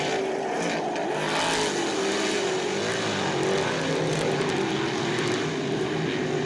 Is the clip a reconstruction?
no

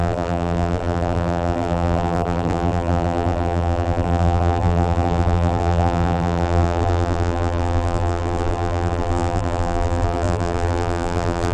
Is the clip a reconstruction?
yes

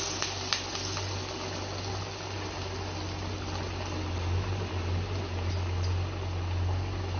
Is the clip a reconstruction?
no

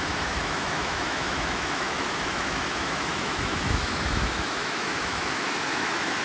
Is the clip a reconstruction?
yes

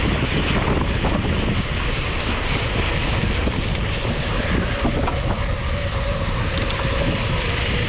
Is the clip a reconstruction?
no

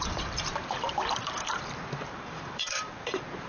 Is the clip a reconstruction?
yes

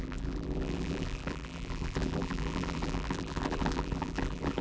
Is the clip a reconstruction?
yes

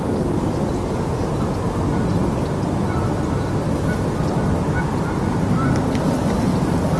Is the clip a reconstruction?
no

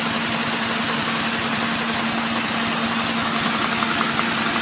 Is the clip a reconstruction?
no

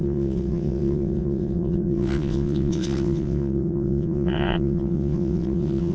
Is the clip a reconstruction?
yes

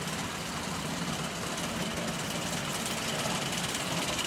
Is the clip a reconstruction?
no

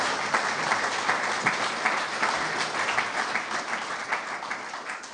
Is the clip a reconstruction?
no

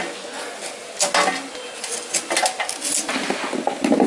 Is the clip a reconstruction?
no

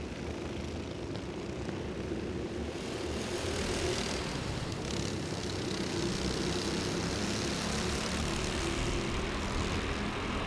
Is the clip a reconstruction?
no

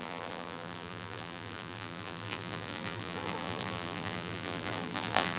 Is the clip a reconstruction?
yes